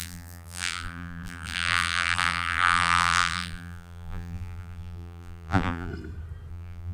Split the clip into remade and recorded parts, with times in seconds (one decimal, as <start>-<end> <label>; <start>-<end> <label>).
0.0-5.9 remade; 5.9-6.5 recorded; 6.5-6.9 remade